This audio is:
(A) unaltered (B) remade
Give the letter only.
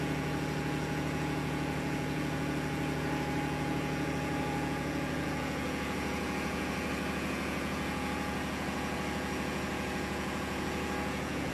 B